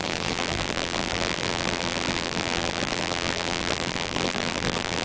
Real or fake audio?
fake